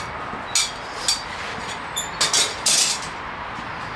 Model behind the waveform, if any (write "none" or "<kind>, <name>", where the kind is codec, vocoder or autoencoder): none